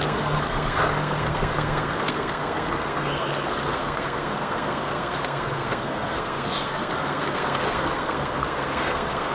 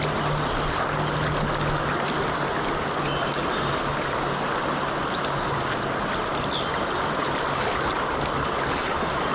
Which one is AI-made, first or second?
first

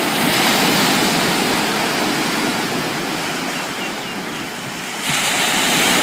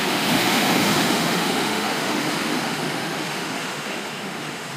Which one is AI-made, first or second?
second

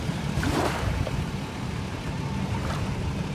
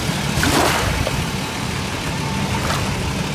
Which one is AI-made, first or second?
first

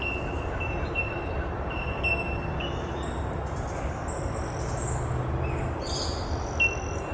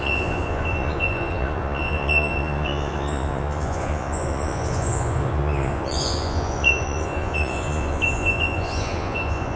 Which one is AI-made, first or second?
second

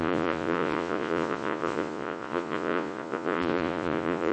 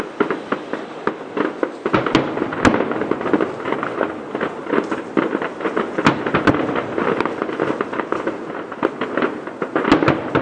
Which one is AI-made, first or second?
first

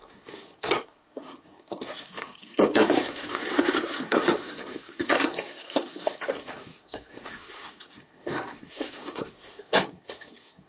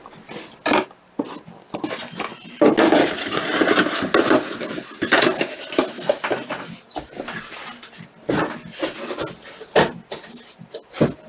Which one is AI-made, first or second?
first